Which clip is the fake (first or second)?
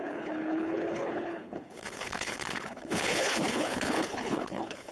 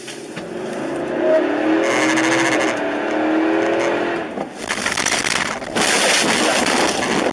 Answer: first